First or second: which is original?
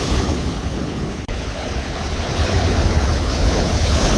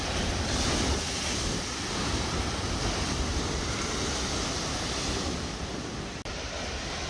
second